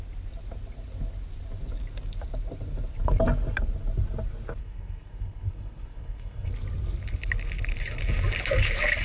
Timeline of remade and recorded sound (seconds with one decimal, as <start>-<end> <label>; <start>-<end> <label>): 0.0-4.6 recorded; 4.6-6.5 remade; 6.5-9.0 recorded